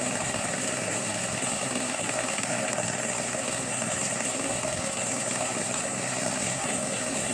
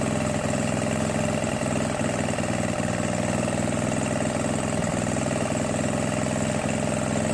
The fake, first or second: first